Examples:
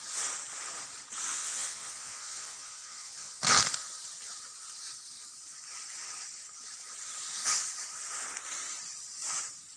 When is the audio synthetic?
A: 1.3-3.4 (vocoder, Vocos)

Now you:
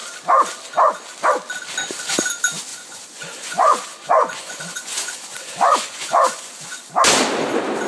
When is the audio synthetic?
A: 2.7-6.8 (vocoder, Vocos)

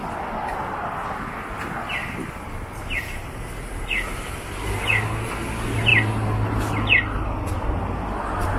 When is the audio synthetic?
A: none

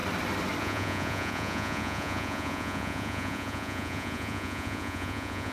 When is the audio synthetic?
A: 0.6-5.5 (vocoder, Vocos)

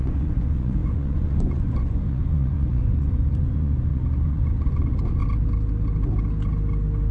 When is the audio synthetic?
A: 0.0-5.2 (vocoder, Vocos)

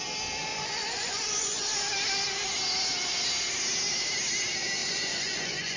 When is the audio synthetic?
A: 0.5-1.8 (vocoder, Vocos); 4.8-5.8

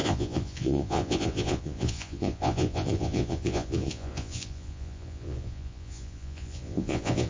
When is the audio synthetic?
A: 0.0-7.3 (vocoder, Vocos)

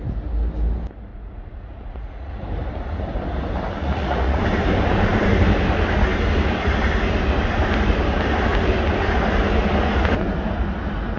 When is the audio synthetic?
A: 1.1-2.3 (vocoder, Vocos); 3.8-4.4